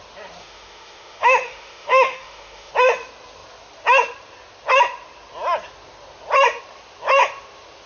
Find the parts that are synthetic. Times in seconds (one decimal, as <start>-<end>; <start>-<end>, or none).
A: 0.4-2.7

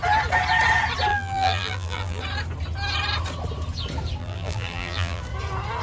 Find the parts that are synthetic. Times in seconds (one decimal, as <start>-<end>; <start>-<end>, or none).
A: 1.1-2.2; 4.2-5.2

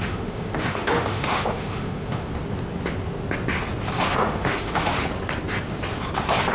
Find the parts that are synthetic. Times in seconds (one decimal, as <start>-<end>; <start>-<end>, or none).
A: 0.0-2.3; 4.0-4.9

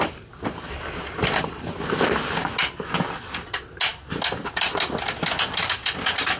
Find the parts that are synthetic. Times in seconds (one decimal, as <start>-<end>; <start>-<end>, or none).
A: none

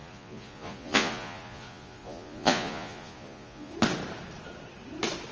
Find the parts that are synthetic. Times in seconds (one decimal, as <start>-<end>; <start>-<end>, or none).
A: 0.0-3.7

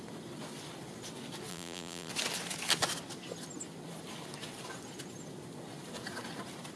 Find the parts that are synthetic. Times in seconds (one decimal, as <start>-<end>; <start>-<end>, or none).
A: 1.5-2.1

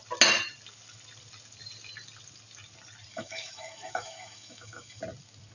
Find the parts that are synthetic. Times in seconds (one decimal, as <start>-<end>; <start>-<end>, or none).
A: 3.1-5.0

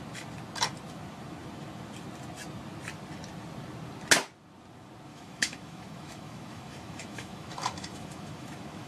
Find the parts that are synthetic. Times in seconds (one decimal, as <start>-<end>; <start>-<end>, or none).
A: 5.1-8.9